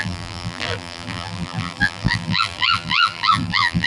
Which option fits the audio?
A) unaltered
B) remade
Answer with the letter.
B